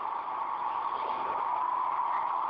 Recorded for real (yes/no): yes